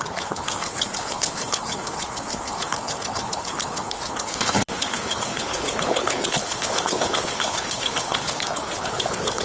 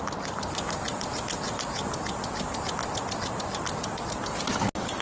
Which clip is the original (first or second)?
second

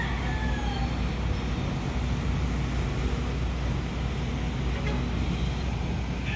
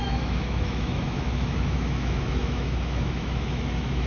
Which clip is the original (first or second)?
first